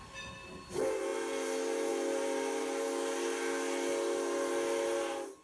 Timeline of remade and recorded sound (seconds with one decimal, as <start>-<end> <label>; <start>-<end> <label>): 0.0-5.4 recorded